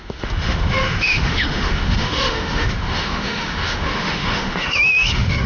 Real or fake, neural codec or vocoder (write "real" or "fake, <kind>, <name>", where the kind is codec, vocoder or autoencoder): fake, autoencoder, DAC-VAE